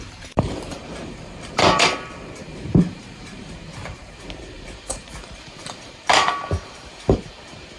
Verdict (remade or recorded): remade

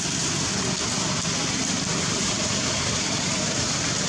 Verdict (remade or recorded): recorded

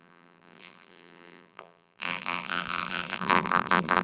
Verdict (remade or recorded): remade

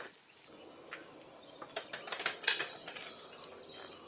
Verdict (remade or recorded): recorded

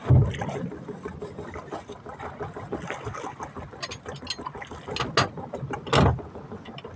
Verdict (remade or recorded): recorded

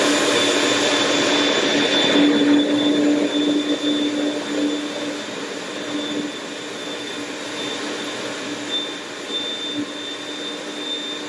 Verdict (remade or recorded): recorded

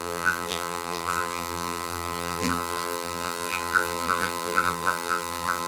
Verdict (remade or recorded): remade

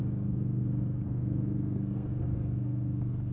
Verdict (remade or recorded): remade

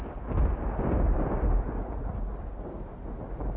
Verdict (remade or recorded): recorded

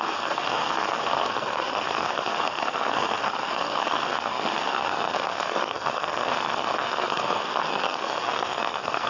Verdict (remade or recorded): remade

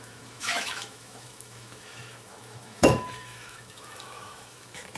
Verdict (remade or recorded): remade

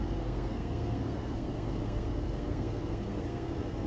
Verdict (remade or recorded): remade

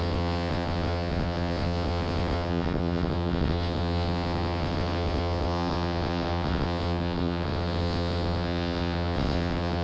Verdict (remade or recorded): remade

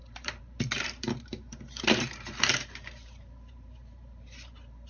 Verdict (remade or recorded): remade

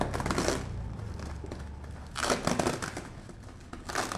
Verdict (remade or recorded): recorded